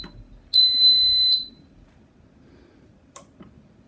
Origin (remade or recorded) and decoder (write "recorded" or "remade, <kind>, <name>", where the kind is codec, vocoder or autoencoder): recorded